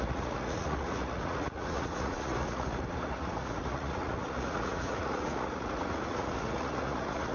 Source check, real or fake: fake